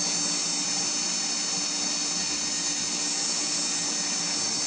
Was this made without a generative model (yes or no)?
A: yes